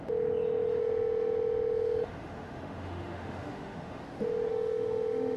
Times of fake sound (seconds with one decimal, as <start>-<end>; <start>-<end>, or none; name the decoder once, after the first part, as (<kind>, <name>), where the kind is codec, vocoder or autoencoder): 0.8-4.0 (autoencoder, DAC-VAE); 4.5-5.4